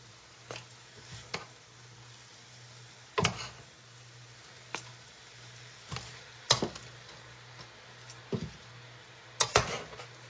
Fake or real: real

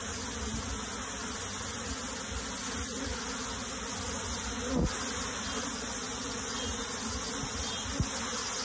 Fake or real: real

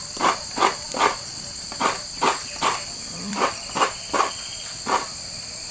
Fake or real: fake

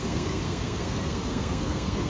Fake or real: fake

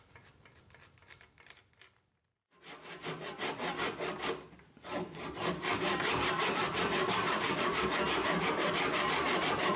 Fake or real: real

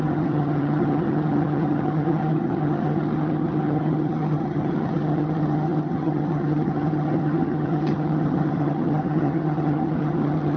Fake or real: fake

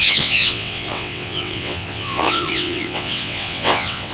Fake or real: fake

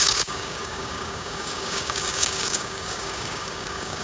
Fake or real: fake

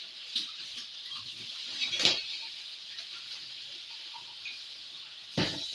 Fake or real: fake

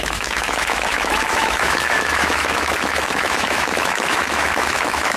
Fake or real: fake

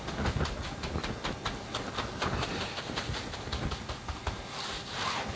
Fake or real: real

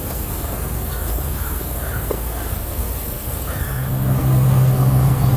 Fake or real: fake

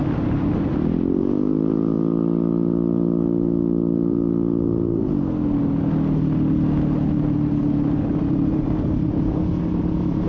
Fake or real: real